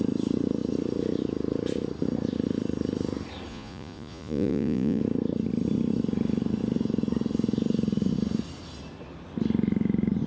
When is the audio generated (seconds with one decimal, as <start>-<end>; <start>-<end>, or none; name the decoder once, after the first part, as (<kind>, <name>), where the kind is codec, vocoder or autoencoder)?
3.5-5.0 (vocoder, Vocos)